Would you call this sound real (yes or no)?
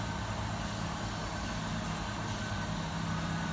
yes